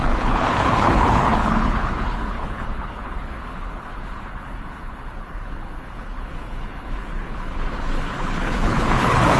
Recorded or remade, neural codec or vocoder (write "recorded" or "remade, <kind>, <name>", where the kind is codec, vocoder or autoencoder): remade, codec, HILCodec